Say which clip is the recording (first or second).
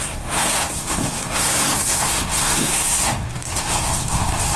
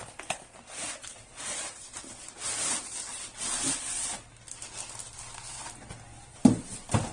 second